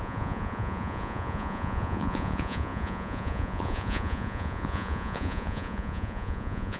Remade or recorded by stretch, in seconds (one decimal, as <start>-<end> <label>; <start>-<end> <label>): 0.0-6.8 remade

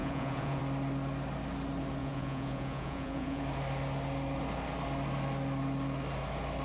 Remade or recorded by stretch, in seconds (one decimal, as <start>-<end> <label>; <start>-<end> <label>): 0.0-0.6 remade; 0.6-2.0 recorded; 2.0-3.4 remade; 3.4-6.6 recorded

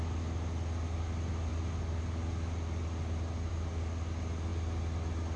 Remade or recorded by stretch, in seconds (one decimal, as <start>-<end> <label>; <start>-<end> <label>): 0.0-5.4 recorded

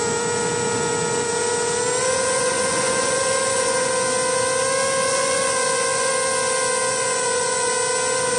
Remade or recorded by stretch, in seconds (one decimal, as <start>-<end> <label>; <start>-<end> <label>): 0.0-2.0 recorded; 2.0-3.9 remade; 3.9-5.0 recorded; 5.0-6.1 remade; 6.1-6.9 recorded; 6.9-7.7 remade; 7.7-8.4 recorded

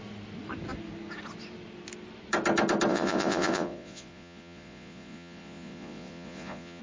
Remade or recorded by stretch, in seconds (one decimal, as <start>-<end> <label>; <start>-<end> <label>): 0.0-2.9 recorded; 2.9-6.8 remade

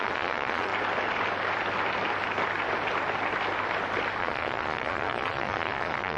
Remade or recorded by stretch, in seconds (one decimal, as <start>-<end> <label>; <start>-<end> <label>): 0.0-0.7 remade; 0.7-4.2 recorded; 4.2-6.2 remade